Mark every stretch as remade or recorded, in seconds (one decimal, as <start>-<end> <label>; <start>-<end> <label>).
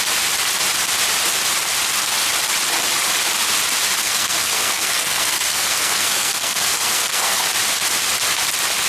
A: 0.0-4.0 recorded; 4.0-7.4 remade; 7.4-8.9 recorded